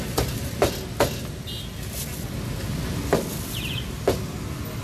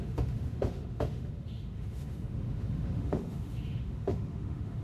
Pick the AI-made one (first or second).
second